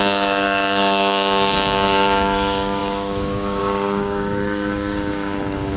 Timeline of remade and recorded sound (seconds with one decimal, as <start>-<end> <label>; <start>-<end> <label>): 0.0-5.8 remade